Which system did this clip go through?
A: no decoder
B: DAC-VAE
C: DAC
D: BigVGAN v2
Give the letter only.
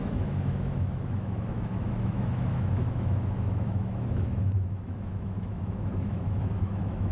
B